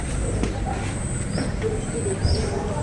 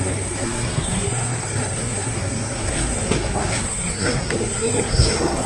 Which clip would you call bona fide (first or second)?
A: first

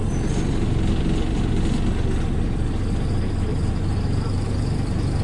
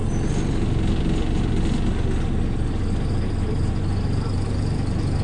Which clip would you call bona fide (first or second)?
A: second